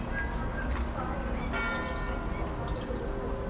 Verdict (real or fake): real